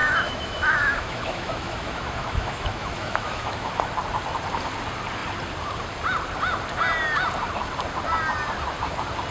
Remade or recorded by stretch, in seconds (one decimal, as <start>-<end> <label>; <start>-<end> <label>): 0.0-3.7 remade; 3.7-9.3 recorded